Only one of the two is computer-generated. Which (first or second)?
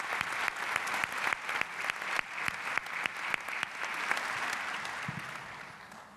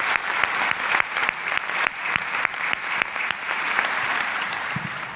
second